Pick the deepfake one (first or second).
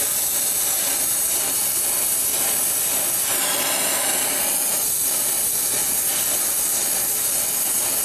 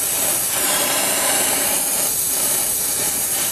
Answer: second